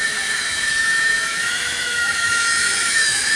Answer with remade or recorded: remade